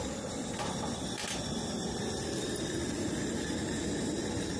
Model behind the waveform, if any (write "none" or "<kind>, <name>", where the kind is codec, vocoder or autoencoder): none